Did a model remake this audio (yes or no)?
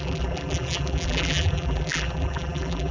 yes